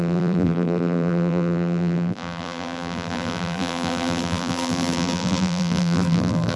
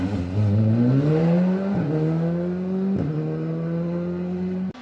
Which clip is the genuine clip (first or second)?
second